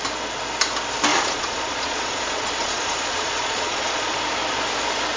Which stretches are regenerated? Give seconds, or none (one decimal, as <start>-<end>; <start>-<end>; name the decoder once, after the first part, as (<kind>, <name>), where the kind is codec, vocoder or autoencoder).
1.1-4.2 (vocoder, Vocos)